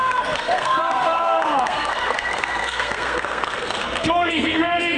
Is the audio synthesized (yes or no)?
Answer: yes